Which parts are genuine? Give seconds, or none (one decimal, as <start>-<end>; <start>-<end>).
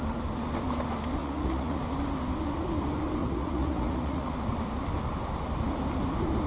0.0-1.2; 1.8-3.2; 4.3-6.5